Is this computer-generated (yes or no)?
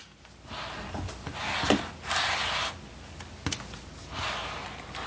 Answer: no